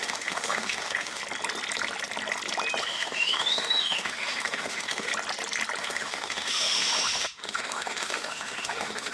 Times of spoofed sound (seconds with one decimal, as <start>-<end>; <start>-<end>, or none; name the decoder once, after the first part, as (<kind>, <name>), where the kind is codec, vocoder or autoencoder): 0.0-1.2 (autoencoder, DAC-VAE); 2.8-5.1; 5.8-9.1